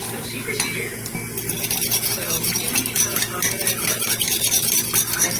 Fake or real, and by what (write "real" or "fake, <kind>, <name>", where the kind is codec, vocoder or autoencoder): real